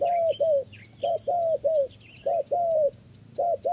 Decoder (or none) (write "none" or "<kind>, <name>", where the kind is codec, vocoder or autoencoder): none